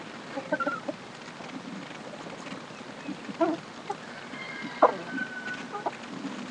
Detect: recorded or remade recorded